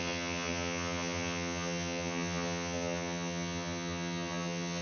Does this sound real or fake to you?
fake